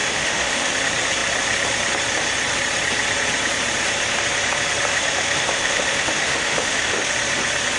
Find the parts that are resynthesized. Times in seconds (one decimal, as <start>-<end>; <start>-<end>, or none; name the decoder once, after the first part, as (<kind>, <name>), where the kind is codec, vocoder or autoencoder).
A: 0.0-0.7 (autoencoder, DAC-VAE); 4.9-7.1